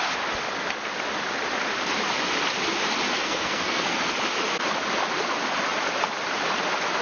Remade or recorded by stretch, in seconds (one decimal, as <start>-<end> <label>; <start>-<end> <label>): 0.0-3.1 recorded; 3.1-4.1 remade; 4.1-7.0 recorded